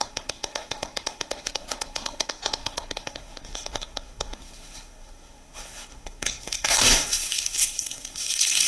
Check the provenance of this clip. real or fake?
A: fake